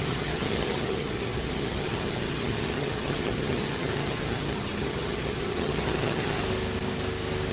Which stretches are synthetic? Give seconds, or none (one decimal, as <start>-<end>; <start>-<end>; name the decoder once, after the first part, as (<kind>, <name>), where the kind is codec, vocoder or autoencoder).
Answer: 0.0-6.4 (vocoder, HiFi-GAN)